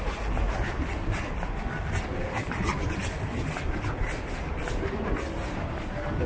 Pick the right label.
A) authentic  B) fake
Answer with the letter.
A